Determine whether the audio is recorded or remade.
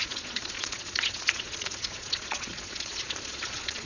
remade